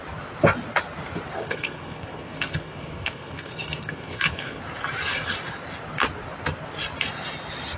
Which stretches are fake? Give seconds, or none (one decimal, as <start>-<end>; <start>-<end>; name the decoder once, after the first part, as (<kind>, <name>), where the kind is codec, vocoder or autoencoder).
1.4-4.6 (codec, SNAC)